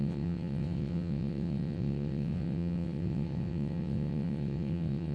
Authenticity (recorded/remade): remade